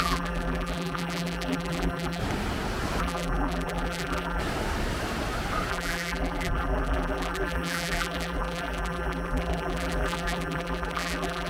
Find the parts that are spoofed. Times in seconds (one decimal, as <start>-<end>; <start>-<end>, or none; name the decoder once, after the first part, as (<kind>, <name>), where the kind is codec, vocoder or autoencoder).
0.0-2.2 (vocoder, BigVGAN v2); 3.0-4.4; 5.7-11.5